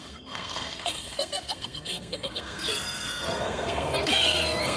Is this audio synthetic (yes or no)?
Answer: yes